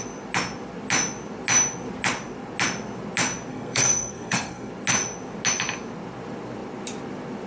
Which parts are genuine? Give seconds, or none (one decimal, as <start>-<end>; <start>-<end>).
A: 0.0-3.5; 4.7-7.5